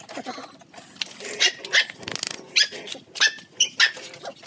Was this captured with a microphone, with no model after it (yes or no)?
yes